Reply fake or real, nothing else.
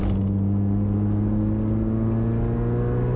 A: real